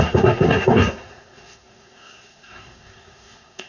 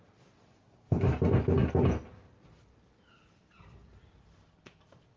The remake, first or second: first